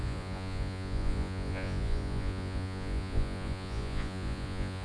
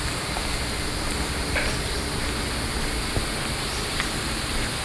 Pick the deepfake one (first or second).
first